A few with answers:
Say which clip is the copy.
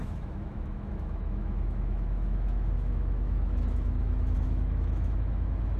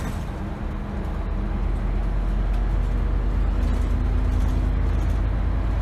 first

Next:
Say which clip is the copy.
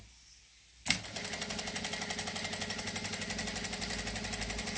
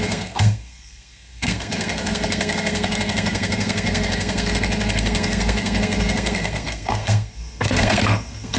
second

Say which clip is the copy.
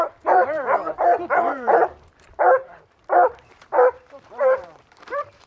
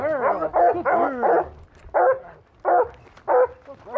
first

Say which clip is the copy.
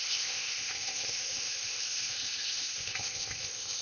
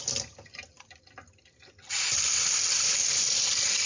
first